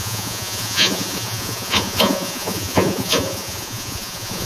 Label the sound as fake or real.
fake